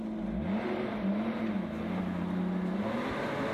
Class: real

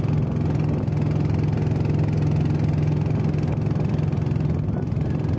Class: real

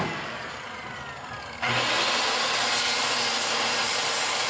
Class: real